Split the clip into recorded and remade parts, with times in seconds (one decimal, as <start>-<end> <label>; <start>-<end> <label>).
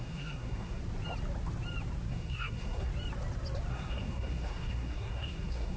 0.0-0.8 remade; 0.8-2.1 recorded; 2.1-2.9 remade; 2.9-3.7 recorded; 3.7-5.8 remade